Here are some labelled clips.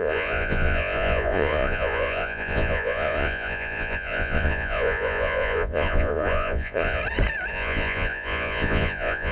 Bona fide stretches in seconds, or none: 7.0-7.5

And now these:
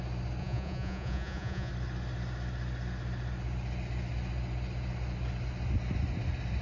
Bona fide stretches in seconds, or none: 0.0-0.4; 1.7-6.6

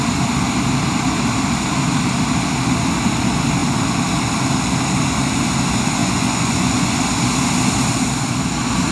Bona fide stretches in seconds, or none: 0.0-6.0; 7.0-8.9

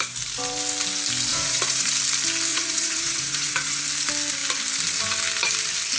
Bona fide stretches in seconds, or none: 0.0-1.3; 1.9-2.5; 3.8-6.0

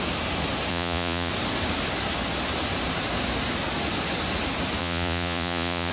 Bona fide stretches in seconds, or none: 0.0-0.7; 1.3-4.8

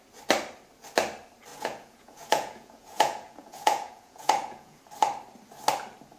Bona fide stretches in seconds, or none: 0.0-1.5; 4.8-6.2